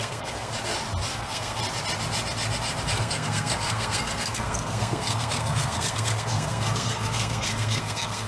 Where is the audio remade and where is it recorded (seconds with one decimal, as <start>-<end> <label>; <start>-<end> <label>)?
0.0-0.5 remade; 0.5-1.1 recorded; 1.1-1.6 remade; 1.6-3.0 recorded; 3.0-8.3 remade